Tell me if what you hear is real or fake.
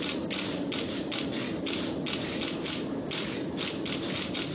real